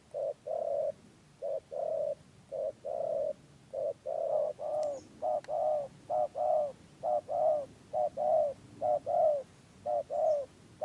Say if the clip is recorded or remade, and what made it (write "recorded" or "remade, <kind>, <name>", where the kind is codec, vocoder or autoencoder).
recorded